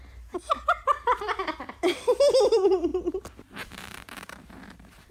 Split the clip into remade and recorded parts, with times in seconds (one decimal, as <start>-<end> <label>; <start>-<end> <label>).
0.0-5.1 remade